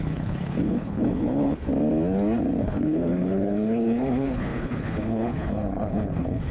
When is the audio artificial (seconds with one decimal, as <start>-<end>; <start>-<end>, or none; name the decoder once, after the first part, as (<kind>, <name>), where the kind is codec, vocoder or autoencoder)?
0.0-1.7 (codec, HILCodec); 2.6-6.5